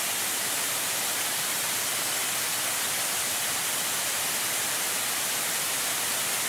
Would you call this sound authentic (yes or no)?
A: yes